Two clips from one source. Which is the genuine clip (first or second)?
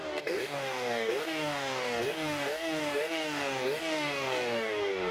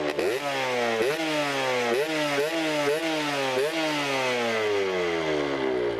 second